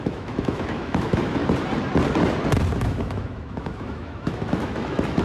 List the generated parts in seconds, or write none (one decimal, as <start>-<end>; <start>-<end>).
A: 0.0-1.4; 2.8-5.2